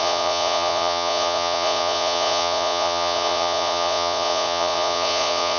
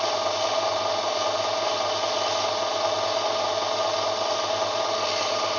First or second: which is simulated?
first